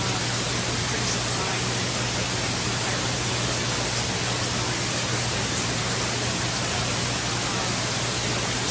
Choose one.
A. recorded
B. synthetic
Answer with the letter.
A